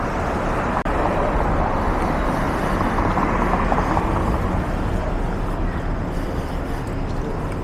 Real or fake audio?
real